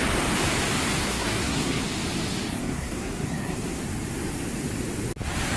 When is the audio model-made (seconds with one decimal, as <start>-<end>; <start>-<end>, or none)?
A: 1.0-1.8; 2.6-3.8